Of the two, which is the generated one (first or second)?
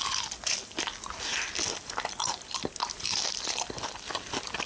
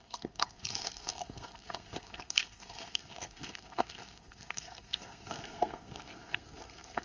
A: second